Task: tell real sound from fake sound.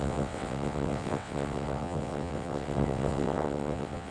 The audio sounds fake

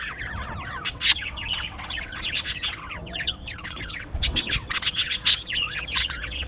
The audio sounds fake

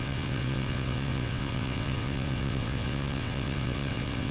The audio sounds fake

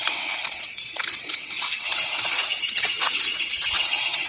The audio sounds fake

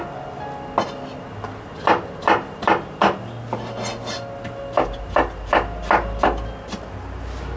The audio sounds real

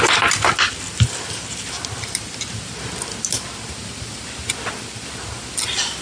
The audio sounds real